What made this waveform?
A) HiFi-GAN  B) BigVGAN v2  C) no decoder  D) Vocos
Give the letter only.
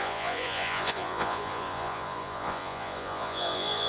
D